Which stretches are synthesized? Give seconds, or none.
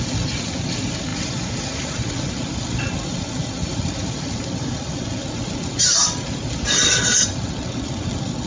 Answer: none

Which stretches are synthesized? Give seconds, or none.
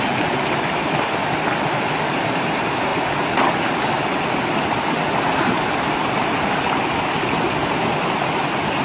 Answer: none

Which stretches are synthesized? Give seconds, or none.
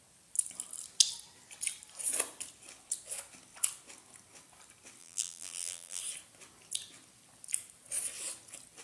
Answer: 5.0-6.0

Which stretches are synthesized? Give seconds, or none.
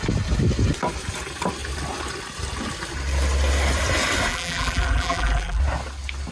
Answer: 4.3-5.6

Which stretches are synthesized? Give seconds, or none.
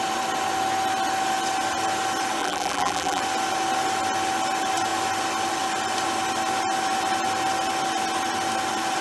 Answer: 2.4-3.2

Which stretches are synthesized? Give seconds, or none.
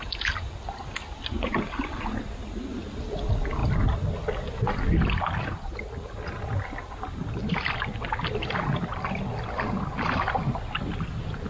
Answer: none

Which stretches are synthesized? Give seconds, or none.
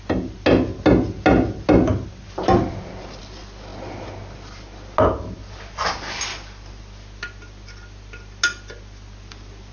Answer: 1.9-3.2